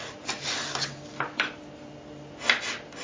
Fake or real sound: real